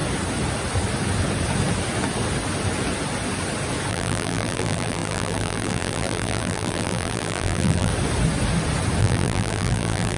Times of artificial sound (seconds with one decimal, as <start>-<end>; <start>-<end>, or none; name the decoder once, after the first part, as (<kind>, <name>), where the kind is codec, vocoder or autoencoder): 3.9-7.9 (vocoder, BigVGAN v2); 9.0-10.2